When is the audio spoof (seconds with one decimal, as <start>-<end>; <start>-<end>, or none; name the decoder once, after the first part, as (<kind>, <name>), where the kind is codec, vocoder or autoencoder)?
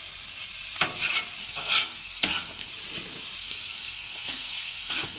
1.4-2.7 (codec, SNAC); 3.4-5.2